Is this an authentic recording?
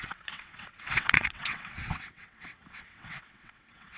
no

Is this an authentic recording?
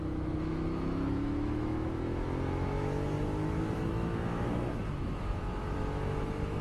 no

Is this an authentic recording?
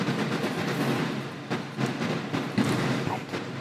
yes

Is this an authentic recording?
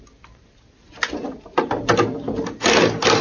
yes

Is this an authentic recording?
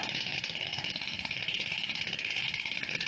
no